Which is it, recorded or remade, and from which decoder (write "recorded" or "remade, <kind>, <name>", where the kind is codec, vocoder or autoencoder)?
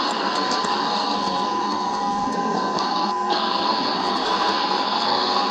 remade, codec, SNAC